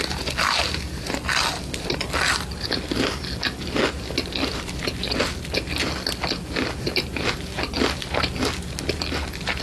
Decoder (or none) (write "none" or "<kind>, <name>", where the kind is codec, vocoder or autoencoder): none